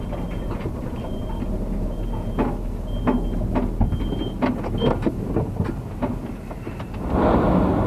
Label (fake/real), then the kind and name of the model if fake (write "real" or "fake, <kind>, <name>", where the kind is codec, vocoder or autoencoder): real